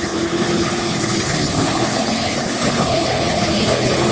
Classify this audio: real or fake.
fake